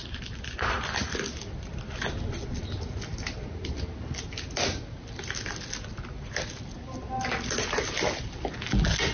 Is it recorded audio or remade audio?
recorded